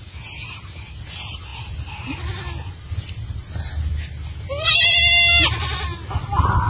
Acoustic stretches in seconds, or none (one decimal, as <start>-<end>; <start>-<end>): 0.0-6.7